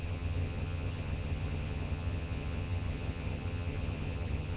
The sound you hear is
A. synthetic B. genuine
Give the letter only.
A